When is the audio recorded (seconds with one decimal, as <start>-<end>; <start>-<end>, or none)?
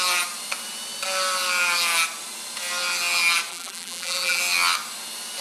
0.0-3.5; 4.4-5.4